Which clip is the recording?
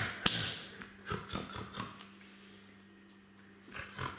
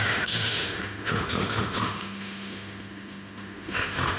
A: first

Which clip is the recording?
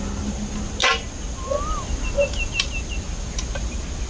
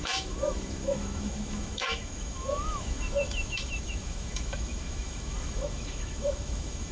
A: first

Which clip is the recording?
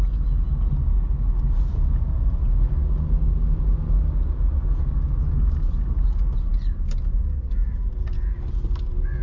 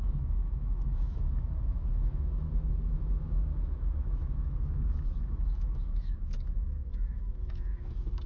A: first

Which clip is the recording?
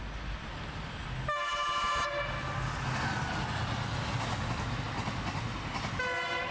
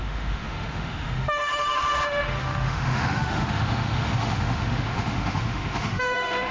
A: first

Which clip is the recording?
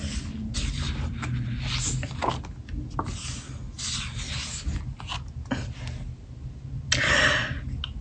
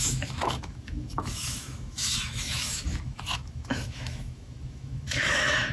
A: first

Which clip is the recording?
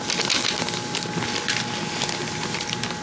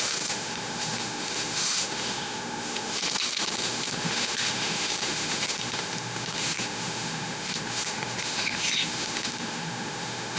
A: first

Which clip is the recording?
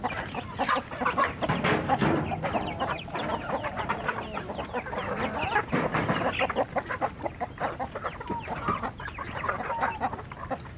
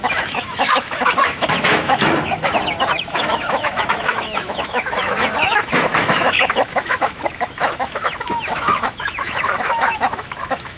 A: first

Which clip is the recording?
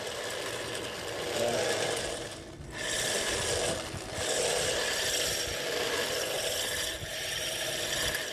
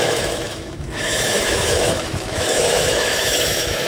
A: first